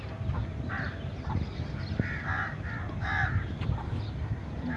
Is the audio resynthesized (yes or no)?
no